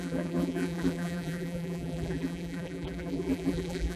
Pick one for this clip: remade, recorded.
remade